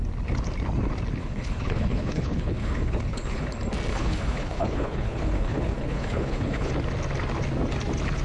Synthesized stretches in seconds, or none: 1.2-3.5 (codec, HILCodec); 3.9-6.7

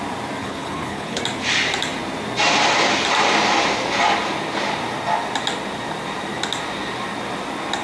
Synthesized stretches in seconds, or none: 0.4-1.2 (codec, HILCodec)

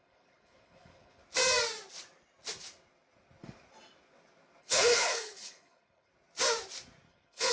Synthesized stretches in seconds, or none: 0.0-1.2 (codec, HILCodec); 4.6-6.1; 7.1-7.5

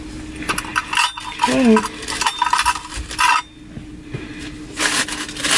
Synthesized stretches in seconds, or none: none

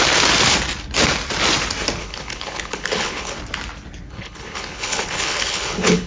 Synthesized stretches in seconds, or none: 2.0-3.4 (codec, HILCodec); 4.1-6.1

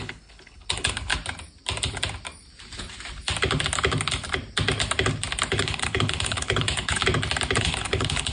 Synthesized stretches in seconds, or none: 0.0-1.1 (codec, HILCodec); 5.5-7.0; 7.6-8.3

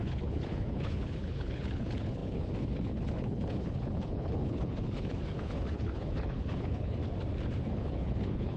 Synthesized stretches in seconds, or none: 0.0-7.0 (codec, HILCodec); 7.6-8.6

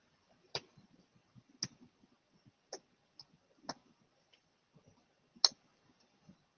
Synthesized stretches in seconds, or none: none